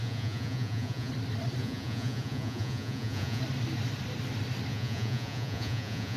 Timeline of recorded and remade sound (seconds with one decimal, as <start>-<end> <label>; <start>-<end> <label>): 0.0-1.1 remade; 1.1-1.6 recorded; 1.6-3.4 remade; 3.4-4.7 recorded; 4.7-6.2 remade